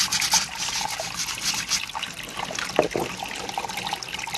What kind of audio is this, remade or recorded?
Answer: recorded